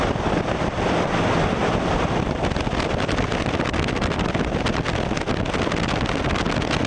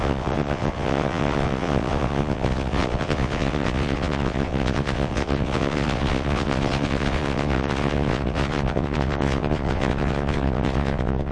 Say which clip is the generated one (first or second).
second